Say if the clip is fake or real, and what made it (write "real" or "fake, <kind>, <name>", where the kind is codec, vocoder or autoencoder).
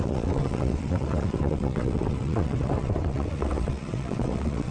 fake, vocoder, WaveNeXt